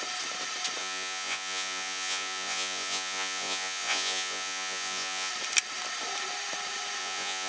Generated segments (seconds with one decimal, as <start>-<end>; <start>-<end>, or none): 0.8-5.3; 7.0-7.5